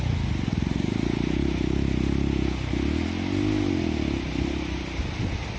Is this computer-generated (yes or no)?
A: no